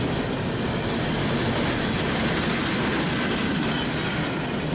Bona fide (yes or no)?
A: yes